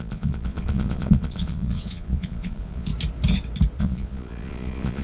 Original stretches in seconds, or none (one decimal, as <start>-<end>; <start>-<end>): 2.9-3.8